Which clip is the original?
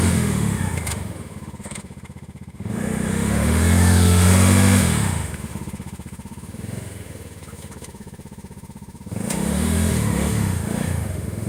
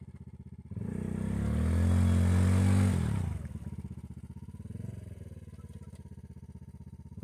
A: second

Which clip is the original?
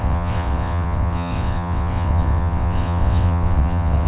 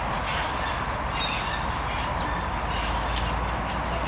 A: second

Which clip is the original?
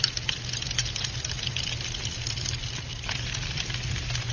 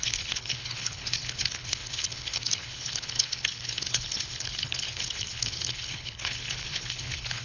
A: first